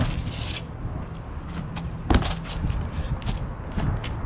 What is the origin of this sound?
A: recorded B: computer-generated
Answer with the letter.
A